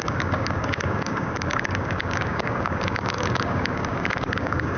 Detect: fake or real fake